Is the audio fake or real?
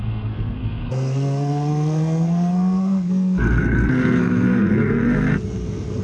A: fake